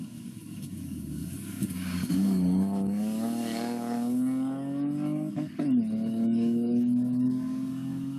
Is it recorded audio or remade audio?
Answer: remade